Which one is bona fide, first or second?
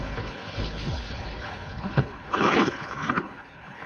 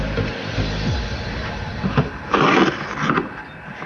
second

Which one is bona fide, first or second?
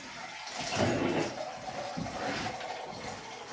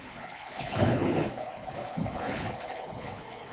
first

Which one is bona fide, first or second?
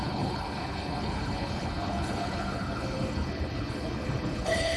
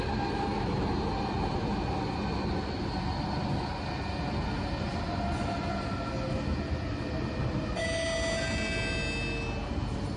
second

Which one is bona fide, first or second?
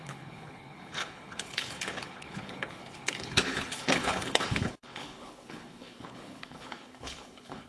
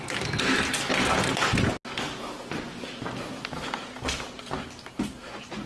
second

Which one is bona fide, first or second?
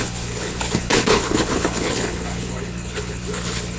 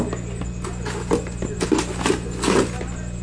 second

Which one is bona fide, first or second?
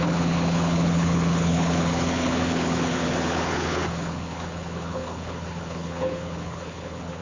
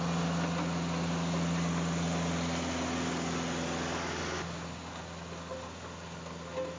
second